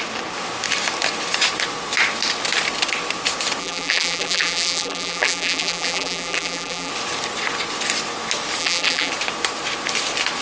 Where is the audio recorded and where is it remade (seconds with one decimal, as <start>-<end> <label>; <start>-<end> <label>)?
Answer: 0.0-3.6 recorded; 3.6-6.9 remade; 6.9-8.6 recorded; 8.6-9.1 remade; 9.1-10.4 recorded